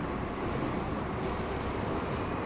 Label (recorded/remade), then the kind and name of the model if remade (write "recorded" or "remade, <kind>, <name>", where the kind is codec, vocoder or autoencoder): recorded